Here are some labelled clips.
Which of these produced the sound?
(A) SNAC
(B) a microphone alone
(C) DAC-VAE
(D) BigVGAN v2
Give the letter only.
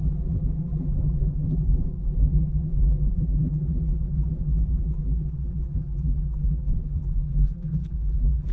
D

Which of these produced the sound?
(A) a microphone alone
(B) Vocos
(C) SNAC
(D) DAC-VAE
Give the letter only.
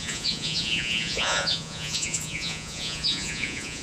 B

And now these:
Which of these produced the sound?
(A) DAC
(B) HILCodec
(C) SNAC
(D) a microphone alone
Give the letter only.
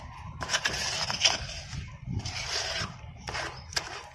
D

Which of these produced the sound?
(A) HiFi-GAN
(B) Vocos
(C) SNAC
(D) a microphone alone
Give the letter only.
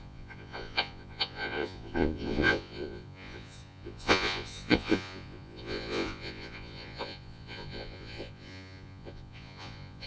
B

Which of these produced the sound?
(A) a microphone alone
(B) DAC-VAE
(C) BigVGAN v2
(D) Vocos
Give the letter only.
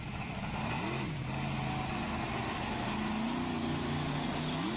A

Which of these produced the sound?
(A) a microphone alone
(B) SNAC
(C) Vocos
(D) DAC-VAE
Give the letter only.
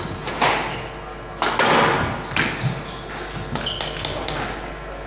A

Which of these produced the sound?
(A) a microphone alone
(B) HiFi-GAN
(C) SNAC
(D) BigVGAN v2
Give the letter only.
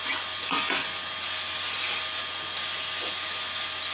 A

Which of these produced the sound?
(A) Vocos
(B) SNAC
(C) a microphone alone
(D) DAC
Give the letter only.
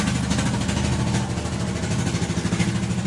C